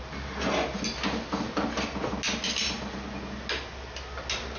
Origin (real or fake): real